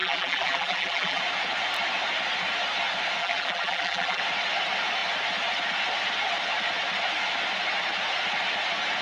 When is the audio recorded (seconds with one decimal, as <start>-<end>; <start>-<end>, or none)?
1.2-3.2; 4.2-9.0

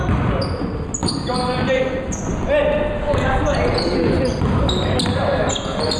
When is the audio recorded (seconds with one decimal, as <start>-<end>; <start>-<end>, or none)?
0.0-6.0

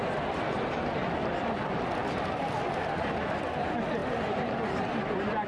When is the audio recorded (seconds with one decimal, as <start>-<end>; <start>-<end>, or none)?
0.0-1.0; 1.6-2.0; 2.6-4.0; 4.9-5.5

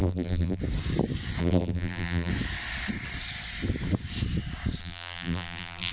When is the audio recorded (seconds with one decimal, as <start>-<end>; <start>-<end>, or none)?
0.6-1.4; 2.3-4.8

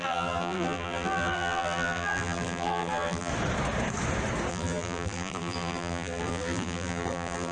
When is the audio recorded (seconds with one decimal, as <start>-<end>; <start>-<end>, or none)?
3.3-4.5

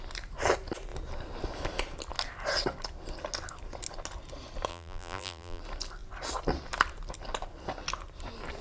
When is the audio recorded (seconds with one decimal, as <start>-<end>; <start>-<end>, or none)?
0.0-4.7; 5.6-8.6